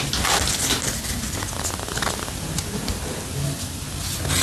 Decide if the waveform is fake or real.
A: real